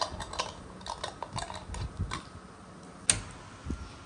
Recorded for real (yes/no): yes